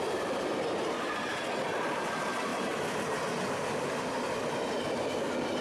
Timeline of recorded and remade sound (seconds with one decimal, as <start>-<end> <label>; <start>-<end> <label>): 0.0-5.6 recorded